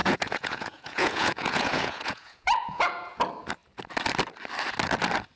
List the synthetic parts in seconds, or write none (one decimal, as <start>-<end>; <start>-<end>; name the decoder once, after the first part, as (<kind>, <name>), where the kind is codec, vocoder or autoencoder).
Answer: 0.0-3.2 (vocoder, Vocos)